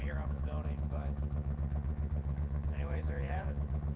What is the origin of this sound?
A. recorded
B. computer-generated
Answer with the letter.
B